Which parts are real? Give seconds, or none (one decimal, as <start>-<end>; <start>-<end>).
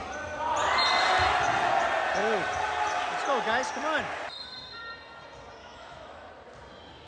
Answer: 0.0-5.6; 6.3-7.1